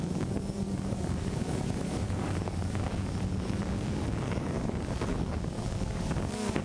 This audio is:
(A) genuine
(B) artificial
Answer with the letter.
B